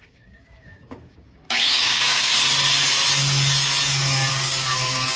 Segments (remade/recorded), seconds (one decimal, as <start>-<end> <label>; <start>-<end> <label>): 0.0-2.3 remade; 2.3-4.3 recorded; 4.3-5.2 remade

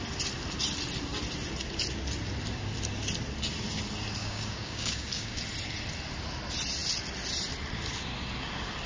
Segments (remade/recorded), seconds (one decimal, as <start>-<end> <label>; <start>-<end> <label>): 0.0-4.2 recorded; 4.2-5.4 remade; 5.4-8.9 recorded